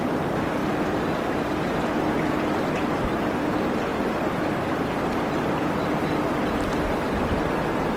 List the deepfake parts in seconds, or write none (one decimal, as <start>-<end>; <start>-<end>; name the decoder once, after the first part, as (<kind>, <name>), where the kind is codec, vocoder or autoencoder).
none